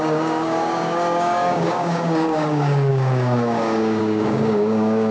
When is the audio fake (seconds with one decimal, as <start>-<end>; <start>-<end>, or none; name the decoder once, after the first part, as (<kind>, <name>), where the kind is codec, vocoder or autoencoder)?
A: 0.0-5.1 (codec, DAC)